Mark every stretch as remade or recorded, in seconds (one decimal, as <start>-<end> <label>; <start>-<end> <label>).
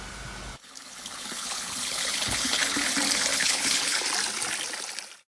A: 0.0-0.5 recorded; 0.5-2.9 remade; 2.9-3.3 recorded; 3.3-4.0 remade; 4.0-5.3 recorded